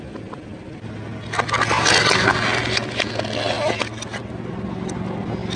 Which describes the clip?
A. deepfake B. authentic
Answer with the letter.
B